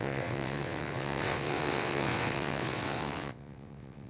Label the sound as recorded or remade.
remade